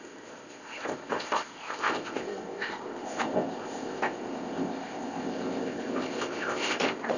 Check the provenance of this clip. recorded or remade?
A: remade